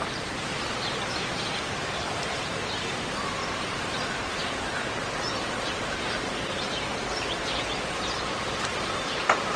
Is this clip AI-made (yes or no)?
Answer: yes